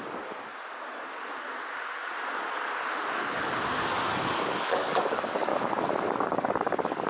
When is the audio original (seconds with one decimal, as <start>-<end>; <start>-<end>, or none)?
0.5-3.9; 5.5-6.1